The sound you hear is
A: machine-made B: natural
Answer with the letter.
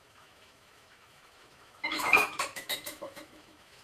A